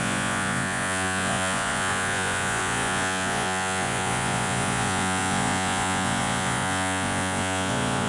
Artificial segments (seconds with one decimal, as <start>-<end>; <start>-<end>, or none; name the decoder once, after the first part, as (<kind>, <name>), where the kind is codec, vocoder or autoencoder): 0.0-8.1 (vocoder, Vocos)